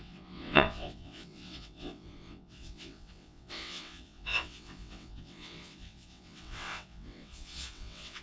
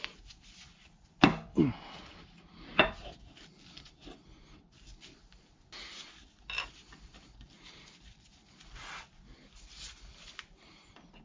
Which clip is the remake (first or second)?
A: first